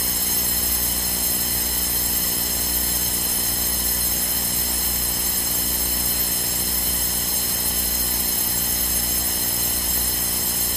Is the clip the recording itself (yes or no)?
yes